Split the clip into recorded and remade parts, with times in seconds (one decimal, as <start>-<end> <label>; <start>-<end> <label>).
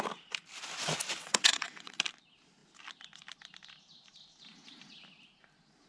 0.0-1.2 recorded; 1.2-2.0 remade; 2.0-5.9 recorded